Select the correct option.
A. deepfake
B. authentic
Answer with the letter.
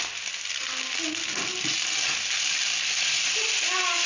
B